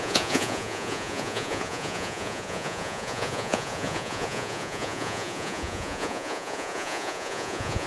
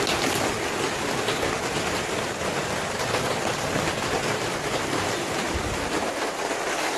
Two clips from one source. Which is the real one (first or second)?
second